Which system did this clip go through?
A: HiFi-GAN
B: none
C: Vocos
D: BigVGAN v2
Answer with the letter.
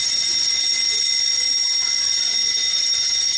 B